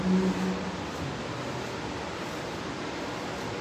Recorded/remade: recorded